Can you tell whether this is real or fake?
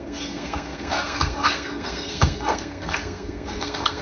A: fake